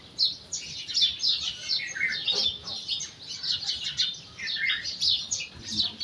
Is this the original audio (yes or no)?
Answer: yes